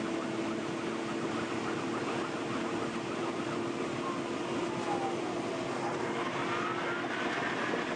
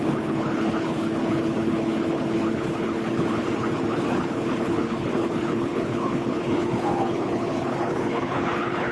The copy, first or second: second